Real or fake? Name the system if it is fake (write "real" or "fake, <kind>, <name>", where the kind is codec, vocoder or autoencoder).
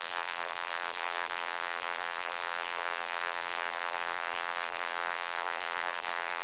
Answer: fake, vocoder, BigVGAN v2